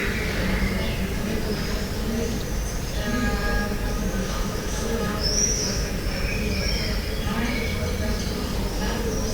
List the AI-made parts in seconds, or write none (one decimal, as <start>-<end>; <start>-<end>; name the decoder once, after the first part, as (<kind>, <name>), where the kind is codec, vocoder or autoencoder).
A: 4.2-5.9 (autoencoder, DAC-VAE)